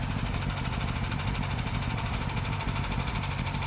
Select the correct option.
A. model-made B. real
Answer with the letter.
A